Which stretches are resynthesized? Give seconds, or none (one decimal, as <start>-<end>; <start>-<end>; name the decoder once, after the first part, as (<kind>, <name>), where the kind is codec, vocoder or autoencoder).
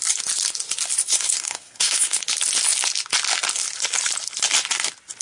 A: 1.0-2.2 (codec, SNAC)